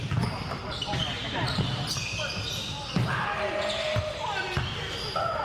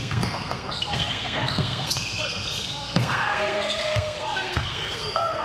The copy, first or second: second